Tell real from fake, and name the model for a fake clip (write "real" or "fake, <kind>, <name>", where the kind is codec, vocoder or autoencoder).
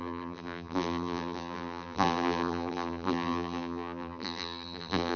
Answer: fake, vocoder, BigVGAN v2